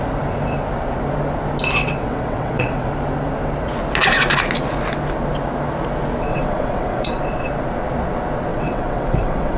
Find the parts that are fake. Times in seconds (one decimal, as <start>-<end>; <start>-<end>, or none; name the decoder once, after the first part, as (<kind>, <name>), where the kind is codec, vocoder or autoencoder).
1.8-2.9 (vocoder, WaveNeXt); 6.3-7.1; 8.5-9.6